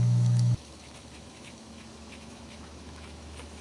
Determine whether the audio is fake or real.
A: fake